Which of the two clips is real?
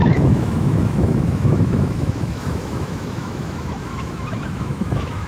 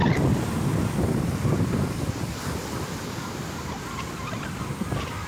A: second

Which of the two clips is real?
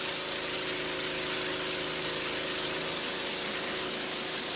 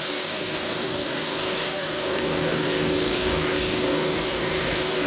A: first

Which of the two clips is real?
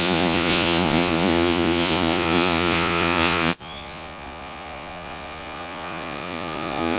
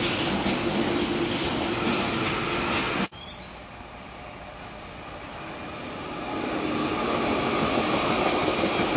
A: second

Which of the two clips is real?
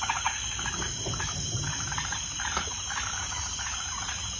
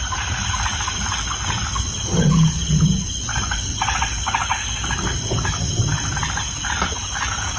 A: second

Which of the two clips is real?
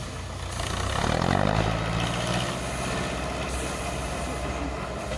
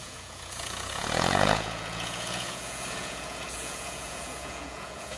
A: first